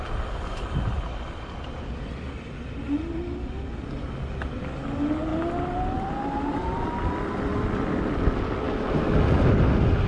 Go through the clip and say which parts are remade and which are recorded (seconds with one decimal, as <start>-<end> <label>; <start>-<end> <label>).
0.0-10.1 recorded